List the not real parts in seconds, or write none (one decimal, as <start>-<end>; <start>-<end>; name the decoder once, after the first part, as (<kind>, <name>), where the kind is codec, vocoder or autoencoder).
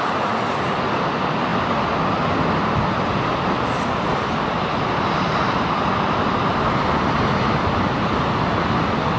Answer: none